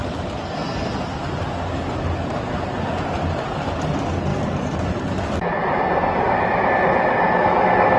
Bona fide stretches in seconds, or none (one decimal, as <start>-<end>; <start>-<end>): 0.0-4.3; 6.7-8.0